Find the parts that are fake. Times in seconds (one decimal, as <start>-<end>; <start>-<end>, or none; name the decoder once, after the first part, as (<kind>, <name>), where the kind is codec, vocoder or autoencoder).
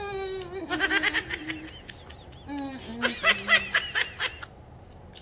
none